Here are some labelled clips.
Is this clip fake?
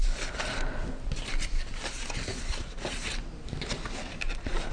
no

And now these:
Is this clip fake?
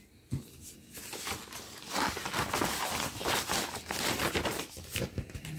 no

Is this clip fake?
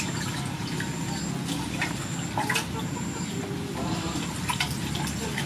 no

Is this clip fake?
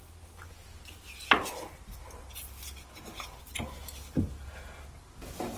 no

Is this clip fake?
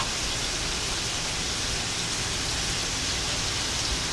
no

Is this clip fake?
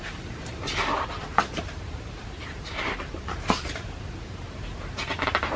yes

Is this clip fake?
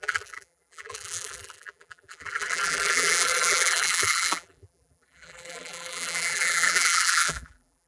yes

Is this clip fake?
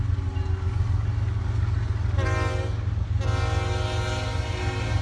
no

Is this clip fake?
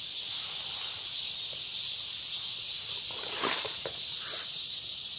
no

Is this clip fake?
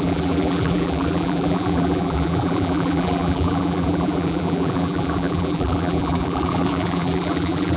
yes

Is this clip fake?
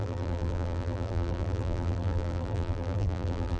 yes